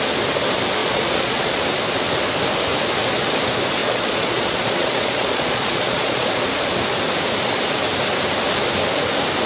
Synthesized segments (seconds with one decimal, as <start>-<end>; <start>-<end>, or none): 0.8-1.6; 3.8-6.3